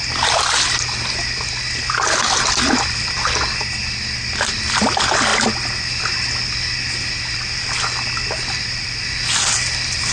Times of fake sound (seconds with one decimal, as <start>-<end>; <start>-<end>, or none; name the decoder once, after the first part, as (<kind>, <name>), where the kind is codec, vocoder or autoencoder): none